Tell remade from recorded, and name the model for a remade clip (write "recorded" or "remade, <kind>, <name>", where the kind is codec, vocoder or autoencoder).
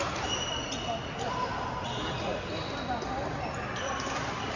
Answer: recorded